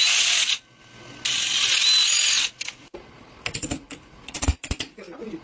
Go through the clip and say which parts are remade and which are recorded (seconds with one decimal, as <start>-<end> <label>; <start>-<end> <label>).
0.0-0.4 remade; 0.4-3.6 recorded; 3.6-5.4 remade